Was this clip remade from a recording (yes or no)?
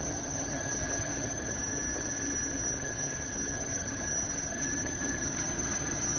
yes